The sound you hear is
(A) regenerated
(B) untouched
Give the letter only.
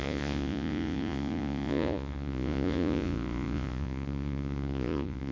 A